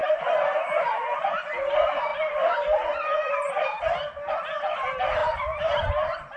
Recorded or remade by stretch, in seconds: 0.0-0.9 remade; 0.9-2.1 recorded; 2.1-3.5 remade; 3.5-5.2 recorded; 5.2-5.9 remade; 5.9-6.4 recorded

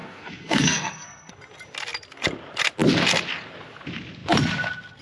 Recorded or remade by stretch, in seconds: 0.0-1.3 remade; 1.3-5.0 recorded

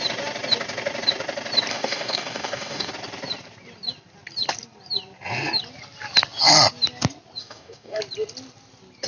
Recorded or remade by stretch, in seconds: 0.0-1.7 recorded; 1.7-2.9 remade; 2.9-7.4 recorded; 7.4-8.0 remade; 8.0-9.1 recorded

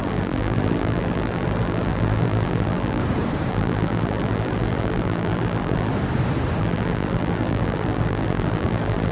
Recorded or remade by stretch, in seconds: 0.0-3.0 remade; 3.0-3.5 recorded; 3.5-5.9 remade; 5.9-6.6 recorded; 6.6-9.1 remade

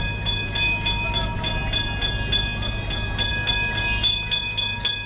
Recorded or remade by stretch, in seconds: 0.0-5.1 recorded

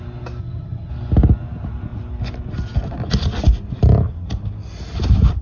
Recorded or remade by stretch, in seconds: 0.0-0.4 recorded; 0.4-0.9 remade; 0.9-5.4 recorded